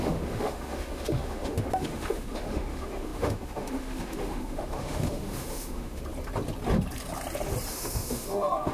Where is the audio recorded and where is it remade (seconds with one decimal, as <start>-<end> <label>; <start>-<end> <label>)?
0.0-6.0 remade; 6.0-7.7 recorded; 7.7-8.7 remade

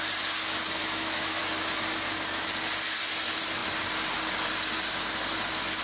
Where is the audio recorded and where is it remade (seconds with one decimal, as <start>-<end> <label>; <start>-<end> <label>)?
0.0-0.8 recorded; 0.8-1.4 remade; 1.4-5.8 recorded

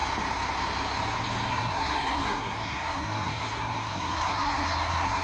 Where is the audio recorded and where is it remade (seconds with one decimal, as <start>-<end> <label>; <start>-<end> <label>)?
0.0-1.5 recorded; 1.5-5.2 remade

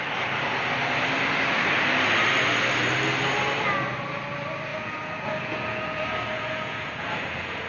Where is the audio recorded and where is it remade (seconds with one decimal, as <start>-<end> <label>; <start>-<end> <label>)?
0.0-4.7 recorded; 4.7-7.7 remade

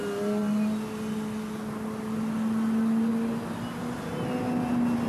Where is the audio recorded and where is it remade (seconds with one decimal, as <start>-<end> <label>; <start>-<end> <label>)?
0.0-5.1 recorded